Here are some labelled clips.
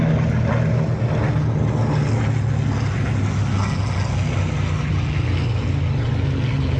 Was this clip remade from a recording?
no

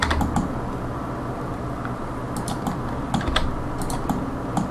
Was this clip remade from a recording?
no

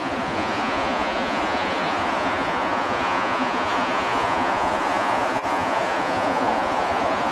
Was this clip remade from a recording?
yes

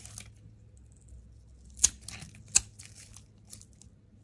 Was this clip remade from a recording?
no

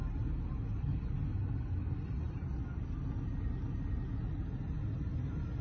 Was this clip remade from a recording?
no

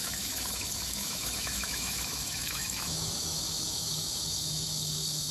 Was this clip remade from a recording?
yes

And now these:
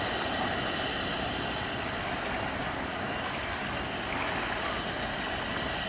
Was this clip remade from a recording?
no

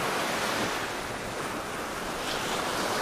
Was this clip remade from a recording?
no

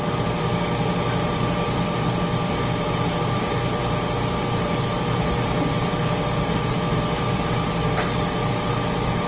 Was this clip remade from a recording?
no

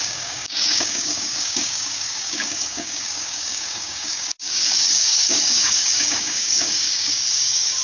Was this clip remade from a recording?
yes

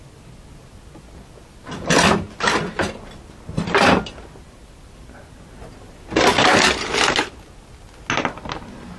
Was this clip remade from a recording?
no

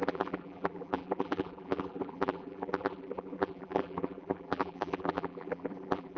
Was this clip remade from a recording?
yes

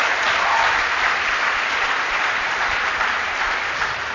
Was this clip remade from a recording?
yes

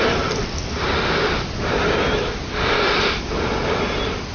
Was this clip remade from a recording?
no